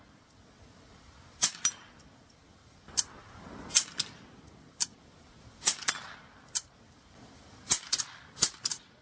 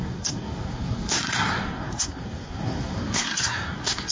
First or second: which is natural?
first